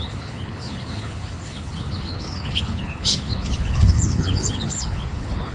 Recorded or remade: remade